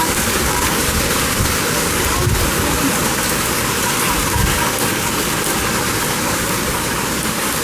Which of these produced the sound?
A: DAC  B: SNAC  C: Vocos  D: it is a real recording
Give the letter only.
A